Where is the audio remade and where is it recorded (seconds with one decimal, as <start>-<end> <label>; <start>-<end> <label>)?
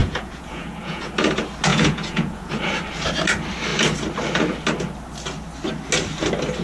0.0-1.1 remade; 1.1-1.7 recorded; 1.7-2.5 remade; 2.5-6.6 recorded